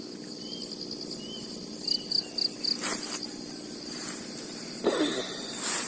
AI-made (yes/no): no